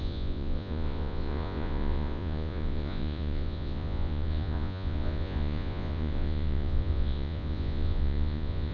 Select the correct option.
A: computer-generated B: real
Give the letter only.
A